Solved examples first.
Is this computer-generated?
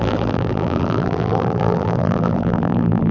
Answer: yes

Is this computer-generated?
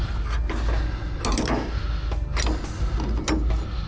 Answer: no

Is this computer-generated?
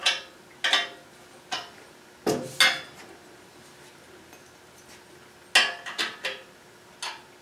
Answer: no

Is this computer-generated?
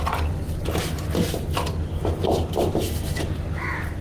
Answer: no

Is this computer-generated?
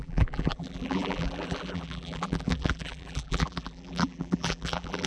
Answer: yes